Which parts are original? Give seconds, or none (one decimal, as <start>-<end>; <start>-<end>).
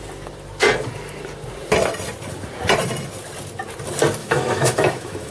0.0-4.2